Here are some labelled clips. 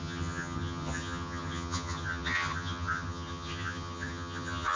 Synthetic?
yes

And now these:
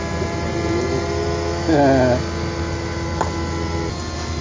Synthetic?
no